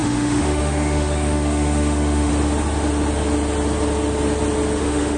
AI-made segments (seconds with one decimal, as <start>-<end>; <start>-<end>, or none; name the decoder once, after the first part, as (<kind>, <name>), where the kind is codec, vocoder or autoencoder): 0.0-2.3 (autoencoder, DAC-VAE); 4.8-5.2